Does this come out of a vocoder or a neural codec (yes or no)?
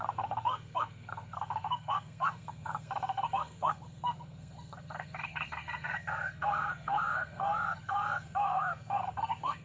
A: yes